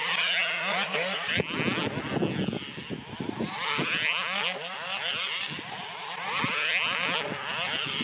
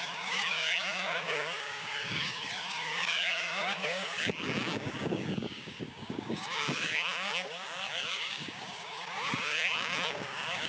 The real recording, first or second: first